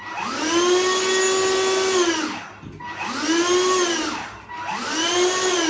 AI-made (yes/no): no